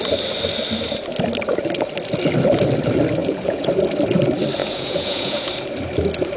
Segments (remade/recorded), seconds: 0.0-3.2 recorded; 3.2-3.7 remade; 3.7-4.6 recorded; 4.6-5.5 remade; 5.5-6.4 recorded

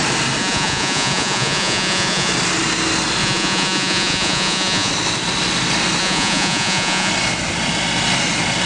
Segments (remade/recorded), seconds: 0.0-0.4 recorded; 0.4-2.3 remade; 2.3-3.2 recorded; 3.2-4.9 remade; 4.9-6.0 recorded; 6.0-7.1 remade; 7.1-8.7 recorded

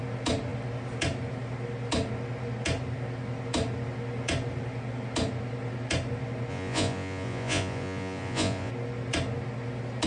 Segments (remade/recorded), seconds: 0.0-6.5 recorded; 6.5-8.7 remade; 8.7-10.1 recorded

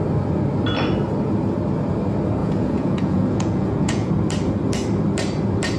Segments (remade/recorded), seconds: 0.0-2.4 recorded; 2.4-4.1 remade; 4.1-5.8 recorded

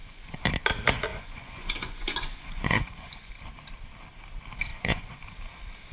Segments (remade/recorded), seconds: 0.0-0.5 remade; 0.5-1.1 recorded; 1.1-3.3 remade; 3.3-4.7 recorded; 4.7-5.2 remade; 5.2-5.9 recorded

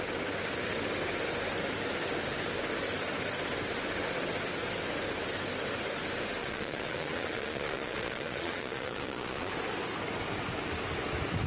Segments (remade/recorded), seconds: 0.0-6.4 recorded; 6.4-9.5 remade; 9.5-11.5 recorded

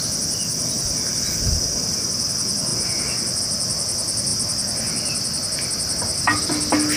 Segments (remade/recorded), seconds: 0.0-7.0 recorded

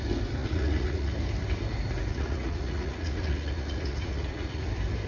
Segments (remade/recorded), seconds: 0.0-0.4 recorded; 0.4-1.1 remade; 1.1-2.1 recorded; 2.1-4.6 remade; 4.6-5.1 recorded